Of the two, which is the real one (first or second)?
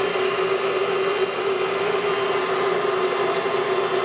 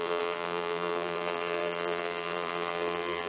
first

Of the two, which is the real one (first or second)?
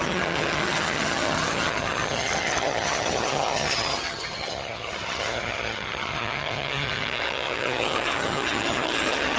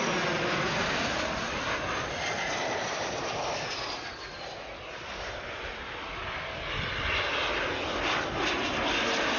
second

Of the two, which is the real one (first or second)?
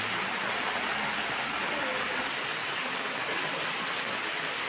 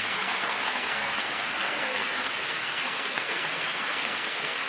first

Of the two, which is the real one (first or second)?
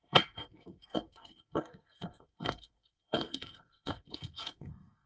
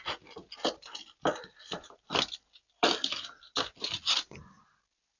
second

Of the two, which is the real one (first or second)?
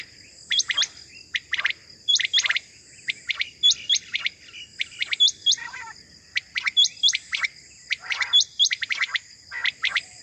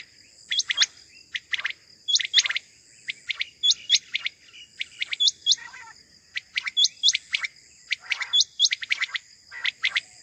second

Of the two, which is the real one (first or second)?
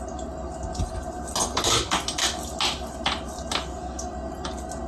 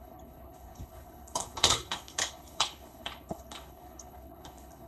first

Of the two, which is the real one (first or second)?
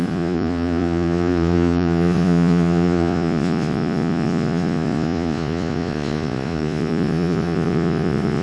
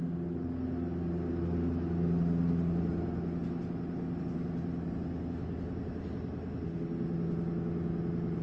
second